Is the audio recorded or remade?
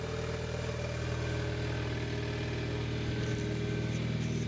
recorded